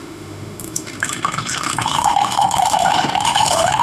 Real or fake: fake